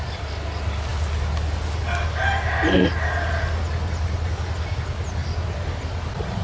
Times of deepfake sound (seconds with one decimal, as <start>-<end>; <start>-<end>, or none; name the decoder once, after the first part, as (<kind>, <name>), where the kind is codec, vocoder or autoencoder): none